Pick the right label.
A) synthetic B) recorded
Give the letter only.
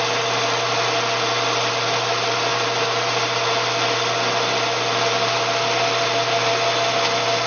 B